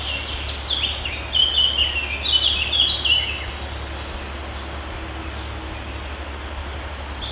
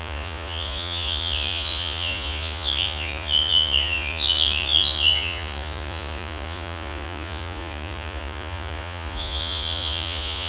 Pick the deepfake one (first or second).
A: second